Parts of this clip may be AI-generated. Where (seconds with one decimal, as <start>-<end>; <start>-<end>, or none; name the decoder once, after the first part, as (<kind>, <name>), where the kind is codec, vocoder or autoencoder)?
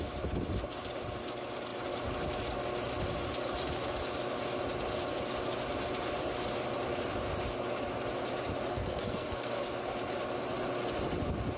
8.7-9.6 (codec, SNAC)